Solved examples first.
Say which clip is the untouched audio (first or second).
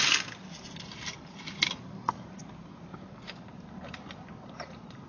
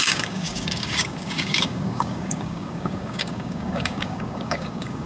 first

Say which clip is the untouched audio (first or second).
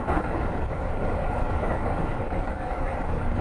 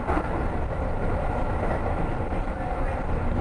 second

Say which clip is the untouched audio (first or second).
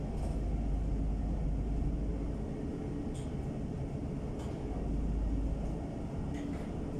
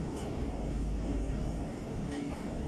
first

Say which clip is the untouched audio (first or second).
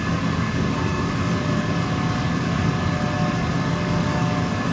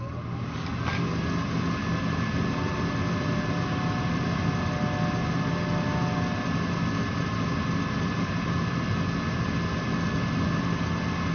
second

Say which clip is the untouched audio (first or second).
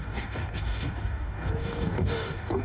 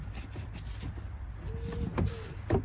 second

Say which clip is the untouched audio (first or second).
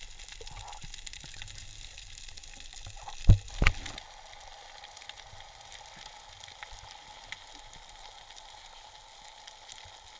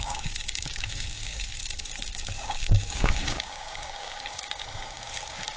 first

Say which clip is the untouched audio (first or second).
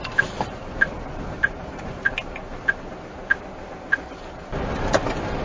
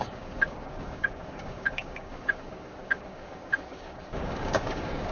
first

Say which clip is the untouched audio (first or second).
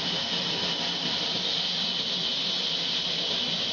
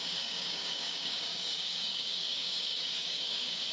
first